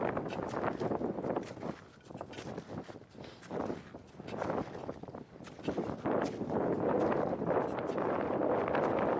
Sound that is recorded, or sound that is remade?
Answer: recorded